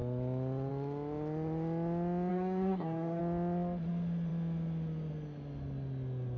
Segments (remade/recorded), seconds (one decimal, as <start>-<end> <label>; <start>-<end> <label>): 0.0-2.3 recorded; 2.3-3.2 remade; 3.2-6.4 recorded